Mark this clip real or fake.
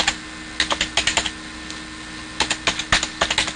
real